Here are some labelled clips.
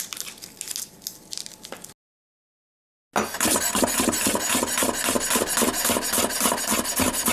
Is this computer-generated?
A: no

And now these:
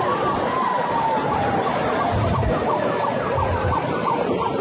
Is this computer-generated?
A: yes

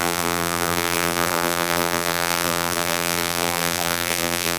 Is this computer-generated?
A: yes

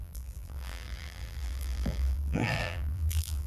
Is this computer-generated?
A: yes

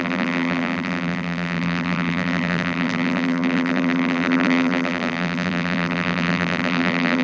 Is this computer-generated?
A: yes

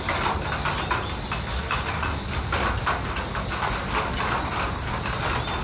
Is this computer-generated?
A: no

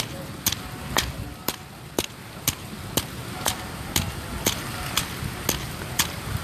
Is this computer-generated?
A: no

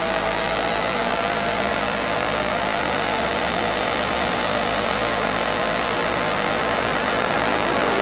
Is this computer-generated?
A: yes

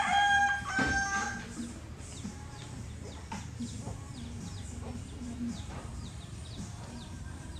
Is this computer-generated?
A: yes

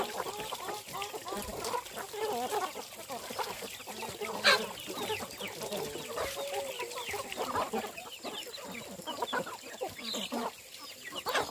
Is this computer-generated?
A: no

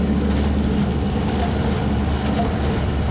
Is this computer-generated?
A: no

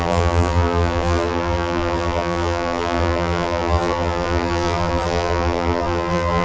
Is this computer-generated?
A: yes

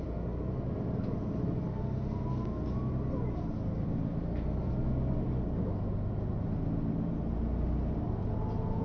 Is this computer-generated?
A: no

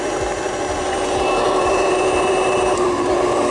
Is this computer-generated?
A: yes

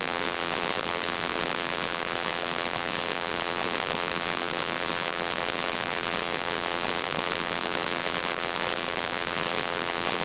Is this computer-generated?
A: yes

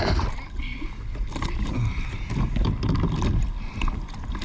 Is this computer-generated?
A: no